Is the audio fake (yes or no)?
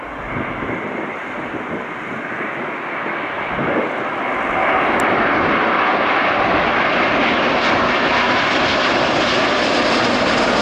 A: no